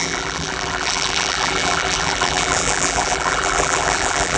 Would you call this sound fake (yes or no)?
yes